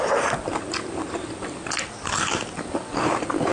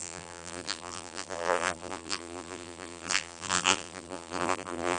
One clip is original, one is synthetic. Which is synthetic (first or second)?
second